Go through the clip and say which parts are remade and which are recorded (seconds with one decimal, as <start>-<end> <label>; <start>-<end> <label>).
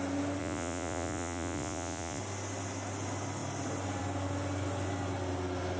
0.0-0.4 recorded; 0.4-2.2 remade; 2.2-5.8 recorded